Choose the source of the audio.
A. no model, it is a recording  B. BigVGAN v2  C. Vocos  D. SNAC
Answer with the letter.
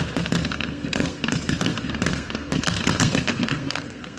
D